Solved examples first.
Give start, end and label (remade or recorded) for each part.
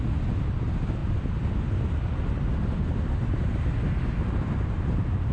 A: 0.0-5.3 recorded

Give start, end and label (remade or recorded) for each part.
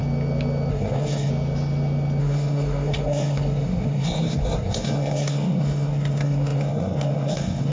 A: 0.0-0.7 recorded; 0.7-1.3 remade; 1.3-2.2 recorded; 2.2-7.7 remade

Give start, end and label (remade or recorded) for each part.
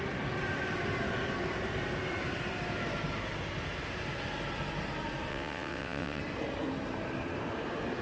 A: 0.0-5.3 recorded; 5.3-6.2 remade; 6.2-8.0 recorded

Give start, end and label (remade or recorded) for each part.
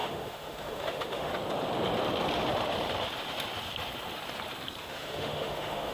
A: 0.0-1.3 remade; 1.3-4.8 recorded; 4.8-5.9 remade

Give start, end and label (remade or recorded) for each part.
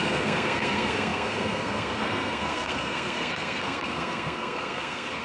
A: 0.0-5.2 remade